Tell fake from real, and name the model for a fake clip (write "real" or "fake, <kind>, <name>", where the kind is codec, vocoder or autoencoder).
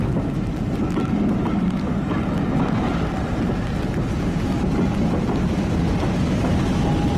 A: real